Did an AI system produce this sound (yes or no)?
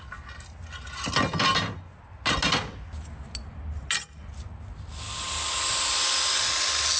no